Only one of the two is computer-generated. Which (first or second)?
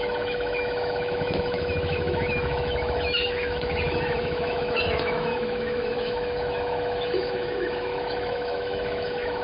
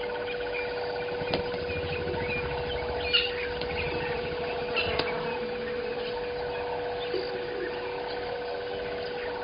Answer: first